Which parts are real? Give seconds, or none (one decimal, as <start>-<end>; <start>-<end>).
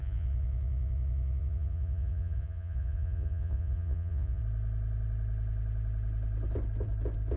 4.4-7.4